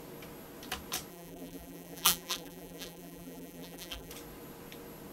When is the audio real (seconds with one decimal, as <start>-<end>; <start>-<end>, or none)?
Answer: 0.0-1.1; 4.1-5.1